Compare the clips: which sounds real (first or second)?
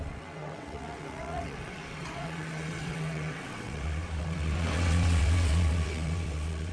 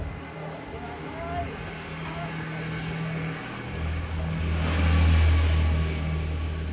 second